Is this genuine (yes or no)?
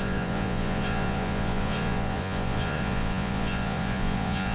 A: no